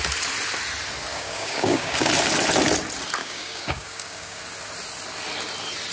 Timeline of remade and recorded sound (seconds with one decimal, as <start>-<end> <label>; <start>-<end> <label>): 0.0-1.1 recorded; 1.1-2.1 remade; 2.1-3.2 recorded; 3.2-4.4 remade; 4.4-5.9 recorded